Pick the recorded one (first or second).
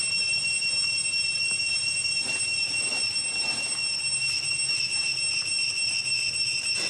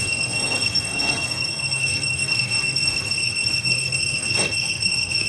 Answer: first